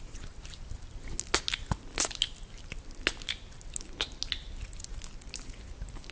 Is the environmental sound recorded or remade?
recorded